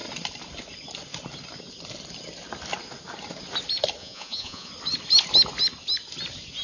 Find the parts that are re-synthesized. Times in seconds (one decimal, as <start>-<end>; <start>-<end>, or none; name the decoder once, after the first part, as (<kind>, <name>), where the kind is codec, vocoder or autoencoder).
4.0-4.7 (vocoder, Vocos)